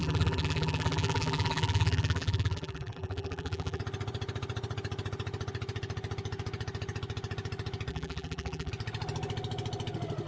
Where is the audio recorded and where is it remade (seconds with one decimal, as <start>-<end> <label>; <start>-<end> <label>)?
0.0-3.8 remade; 3.8-7.9 recorded; 7.9-8.7 remade; 8.7-10.3 recorded